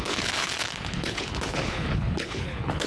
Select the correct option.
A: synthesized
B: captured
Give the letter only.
A